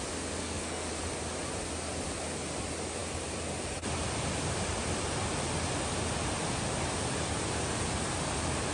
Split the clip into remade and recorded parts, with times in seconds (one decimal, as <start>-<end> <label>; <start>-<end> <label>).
0.0-0.4 recorded; 0.4-0.9 remade; 0.9-8.7 recorded

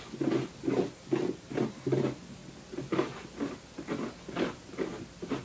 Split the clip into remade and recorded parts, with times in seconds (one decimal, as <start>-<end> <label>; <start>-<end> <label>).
0.0-5.4 recorded

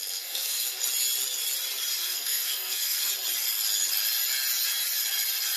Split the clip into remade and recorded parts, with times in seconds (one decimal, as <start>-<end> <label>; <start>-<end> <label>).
0.0-0.8 remade; 0.8-2.0 recorded; 2.0-3.1 remade; 3.1-5.6 recorded

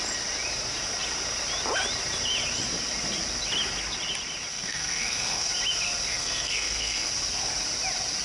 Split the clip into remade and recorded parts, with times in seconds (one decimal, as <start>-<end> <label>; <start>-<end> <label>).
0.0-4.5 recorded; 4.5-5.5 remade; 5.5-6.1 recorded; 6.1-7.1 remade; 7.1-8.2 recorded